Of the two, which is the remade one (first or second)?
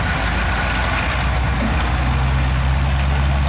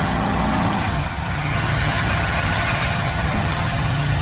second